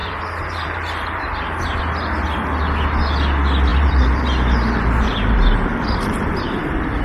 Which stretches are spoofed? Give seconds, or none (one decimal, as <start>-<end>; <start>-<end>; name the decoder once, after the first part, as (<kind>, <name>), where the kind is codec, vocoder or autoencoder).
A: 0.0-1.8 (vocoder, BigVGAN v2); 3.7-7.0